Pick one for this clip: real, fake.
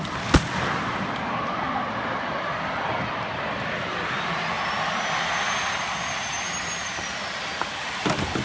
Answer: real